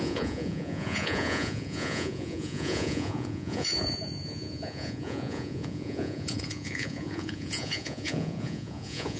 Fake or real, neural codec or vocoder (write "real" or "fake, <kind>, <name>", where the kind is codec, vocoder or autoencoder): fake, vocoder, Vocos